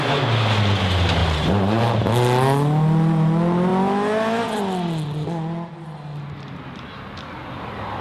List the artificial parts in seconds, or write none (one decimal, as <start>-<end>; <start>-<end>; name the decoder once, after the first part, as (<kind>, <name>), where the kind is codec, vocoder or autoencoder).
1.2-1.8 (vocoder, BigVGAN v2)